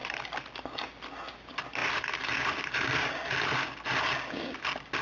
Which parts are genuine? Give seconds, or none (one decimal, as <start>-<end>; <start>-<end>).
0.0-5.0